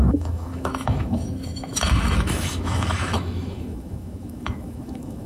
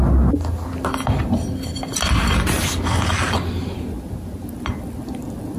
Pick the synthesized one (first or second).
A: first